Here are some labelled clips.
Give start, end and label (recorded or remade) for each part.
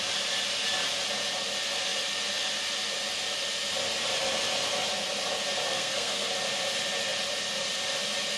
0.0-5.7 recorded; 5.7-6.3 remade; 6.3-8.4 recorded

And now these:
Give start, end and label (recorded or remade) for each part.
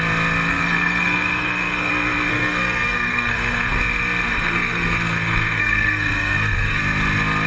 0.0-0.5 recorded; 0.5-1.9 remade; 1.9-2.3 recorded; 2.3-3.8 remade; 3.8-4.3 recorded; 4.3-6.8 remade; 6.8-7.5 recorded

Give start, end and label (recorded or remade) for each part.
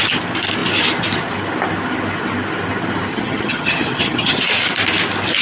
0.0-3.1 recorded; 3.1-4.4 remade; 4.4-5.4 recorded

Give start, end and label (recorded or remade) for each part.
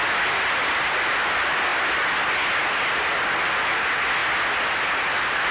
0.0-5.5 recorded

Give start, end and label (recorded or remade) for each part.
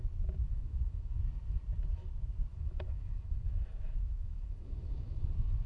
0.0-0.5 recorded; 0.5-1.2 remade; 1.2-2.5 recorded; 2.5-5.2 remade; 5.2-5.7 recorded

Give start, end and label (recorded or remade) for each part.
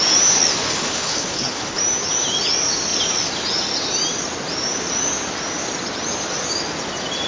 0.0-0.7 recorded; 0.7-1.8 remade; 1.8-7.3 recorded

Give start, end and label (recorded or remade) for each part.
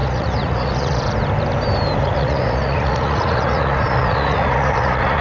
0.0-1.0 remade; 1.0-2.0 recorded; 2.0-5.2 remade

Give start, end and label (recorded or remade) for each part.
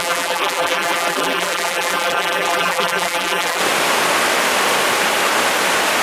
0.0-3.6 remade; 3.6-6.0 recorded